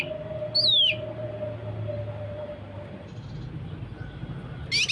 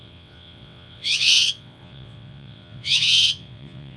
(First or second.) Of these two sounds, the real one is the first